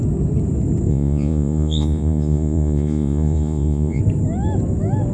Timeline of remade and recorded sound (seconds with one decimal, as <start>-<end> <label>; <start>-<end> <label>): 0.0-0.9 recorded; 0.9-4.0 remade; 4.0-5.1 recorded